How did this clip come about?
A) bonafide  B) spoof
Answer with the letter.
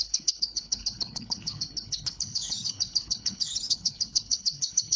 B